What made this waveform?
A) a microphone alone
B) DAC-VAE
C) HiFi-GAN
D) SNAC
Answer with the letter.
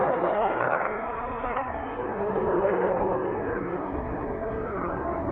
D